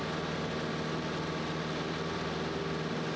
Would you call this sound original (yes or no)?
yes